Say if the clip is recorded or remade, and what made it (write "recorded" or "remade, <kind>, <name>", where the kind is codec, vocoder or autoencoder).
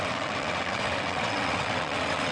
remade, vocoder, WaveNeXt